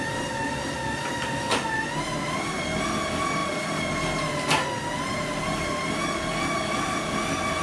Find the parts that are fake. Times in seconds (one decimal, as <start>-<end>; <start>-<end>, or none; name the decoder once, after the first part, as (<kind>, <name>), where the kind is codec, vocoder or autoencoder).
none